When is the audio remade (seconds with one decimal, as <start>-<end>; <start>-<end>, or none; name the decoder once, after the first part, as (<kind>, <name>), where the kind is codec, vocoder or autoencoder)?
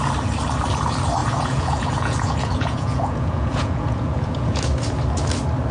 1.2-4.6 (vocoder, Vocos)